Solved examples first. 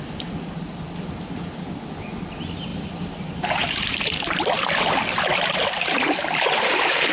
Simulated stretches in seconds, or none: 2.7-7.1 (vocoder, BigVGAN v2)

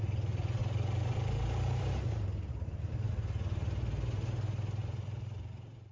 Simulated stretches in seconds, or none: 0.6-3.1 (vocoder, BigVGAN v2); 4.8-5.9

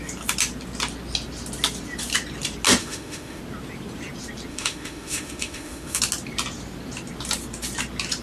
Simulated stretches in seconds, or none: 2.8-3.4 (autoencoder, DAC-VAE); 4.5-6.0